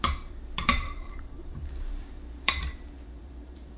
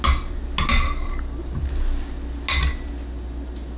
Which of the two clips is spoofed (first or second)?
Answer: first